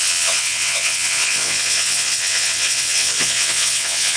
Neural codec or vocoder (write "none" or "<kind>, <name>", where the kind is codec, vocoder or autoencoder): vocoder, WaveNeXt